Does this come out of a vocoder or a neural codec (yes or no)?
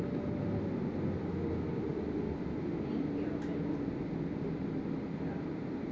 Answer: no